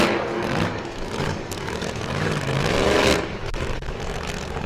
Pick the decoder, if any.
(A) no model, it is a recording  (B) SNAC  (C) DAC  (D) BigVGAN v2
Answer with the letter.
C